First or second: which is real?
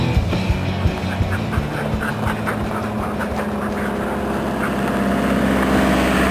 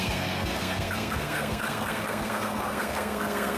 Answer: first